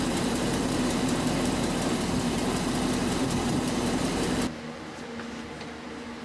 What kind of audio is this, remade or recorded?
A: remade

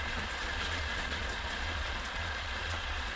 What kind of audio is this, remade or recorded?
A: remade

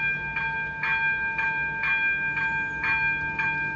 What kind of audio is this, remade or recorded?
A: recorded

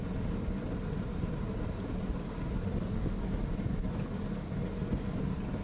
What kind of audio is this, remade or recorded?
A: recorded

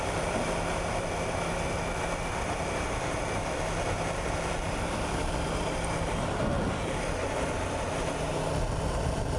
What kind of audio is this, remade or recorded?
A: recorded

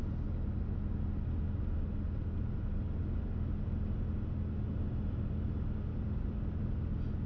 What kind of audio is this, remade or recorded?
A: recorded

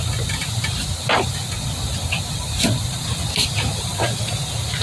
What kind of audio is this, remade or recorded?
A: remade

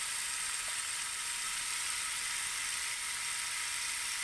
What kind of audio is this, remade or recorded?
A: recorded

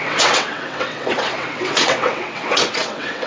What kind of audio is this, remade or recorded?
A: remade